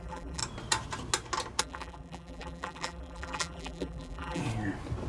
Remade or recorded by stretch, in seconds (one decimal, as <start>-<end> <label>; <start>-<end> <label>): 0.0-0.4 remade; 0.4-1.6 recorded; 1.6-4.4 remade; 4.4-5.1 recorded